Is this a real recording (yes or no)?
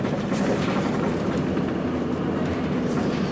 yes